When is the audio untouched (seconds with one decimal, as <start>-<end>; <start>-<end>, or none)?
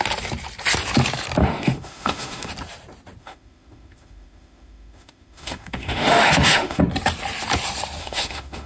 0.0-1.4; 2.5-3.2; 6.8-8.0